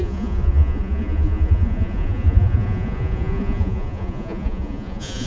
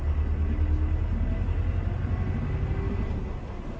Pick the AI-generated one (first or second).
first